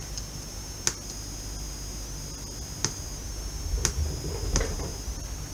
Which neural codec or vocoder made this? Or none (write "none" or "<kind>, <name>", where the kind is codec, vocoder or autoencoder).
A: none